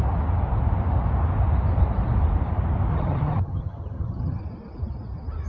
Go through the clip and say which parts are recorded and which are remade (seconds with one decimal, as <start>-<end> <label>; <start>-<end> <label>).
0.0-2.9 recorded; 2.9-4.4 remade; 4.4-5.5 recorded